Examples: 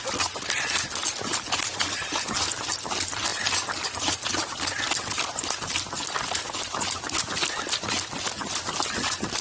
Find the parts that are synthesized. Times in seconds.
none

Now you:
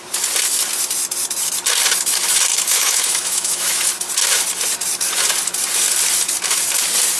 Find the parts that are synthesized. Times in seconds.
2.5-3.9 (autoencoder, DAC-VAE)